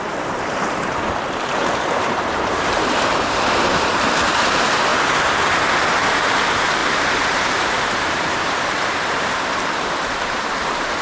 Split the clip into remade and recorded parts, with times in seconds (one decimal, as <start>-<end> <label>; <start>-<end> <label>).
0.0-4.9 remade; 4.9-6.0 recorded; 6.0-11.0 remade